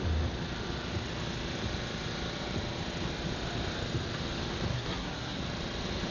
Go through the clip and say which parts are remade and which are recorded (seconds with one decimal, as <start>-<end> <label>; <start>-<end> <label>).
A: 0.0-4.7 recorded; 4.7-5.4 remade; 5.4-6.1 recorded